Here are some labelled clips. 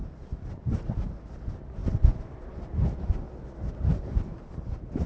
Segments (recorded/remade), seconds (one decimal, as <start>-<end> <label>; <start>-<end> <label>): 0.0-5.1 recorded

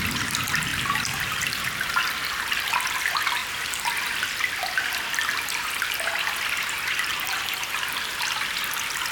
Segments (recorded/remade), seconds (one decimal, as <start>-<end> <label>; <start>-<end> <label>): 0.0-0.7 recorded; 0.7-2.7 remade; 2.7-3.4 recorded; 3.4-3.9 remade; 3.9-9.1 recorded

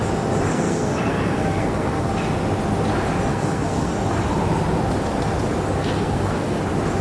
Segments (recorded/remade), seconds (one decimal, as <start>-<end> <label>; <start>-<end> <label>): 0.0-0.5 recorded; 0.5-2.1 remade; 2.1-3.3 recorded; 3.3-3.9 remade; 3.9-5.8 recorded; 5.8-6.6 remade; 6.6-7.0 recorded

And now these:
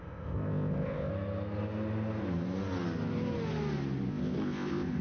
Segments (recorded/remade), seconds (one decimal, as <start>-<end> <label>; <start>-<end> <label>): 0.0-1.1 remade; 1.1-4.1 recorded; 4.1-5.0 remade

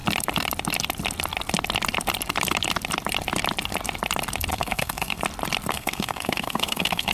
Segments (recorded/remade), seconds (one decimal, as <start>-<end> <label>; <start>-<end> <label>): 0.0-4.5 recorded; 4.5-5.2 remade; 5.2-5.7 recorded; 5.7-7.1 remade

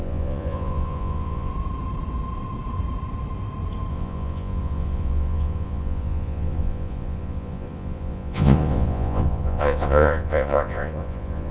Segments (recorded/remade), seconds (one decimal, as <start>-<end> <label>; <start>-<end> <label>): 0.0-1.5 remade; 1.5-3.9 recorded; 3.9-11.5 remade

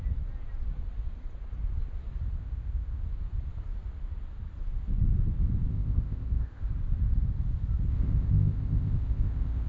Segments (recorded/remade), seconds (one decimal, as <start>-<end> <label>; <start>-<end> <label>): 0.0-2.4 recorded; 2.4-3.0 remade; 3.0-5.7 recorded; 5.7-6.7 remade; 6.7-7.9 recorded; 7.9-9.7 remade